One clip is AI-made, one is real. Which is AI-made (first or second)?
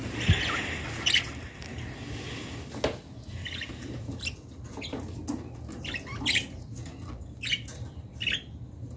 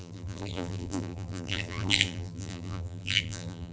second